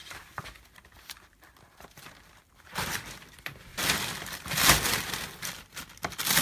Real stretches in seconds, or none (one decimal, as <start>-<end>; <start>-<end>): 3.1-3.7; 4.4-6.4